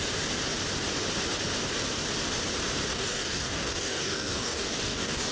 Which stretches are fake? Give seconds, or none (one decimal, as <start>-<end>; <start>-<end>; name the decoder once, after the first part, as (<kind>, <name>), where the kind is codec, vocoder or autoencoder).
2.9-5.3 (codec, DAC)